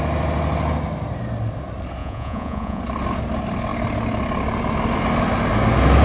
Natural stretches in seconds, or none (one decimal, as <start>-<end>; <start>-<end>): 0.0-2.0; 2.8-6.0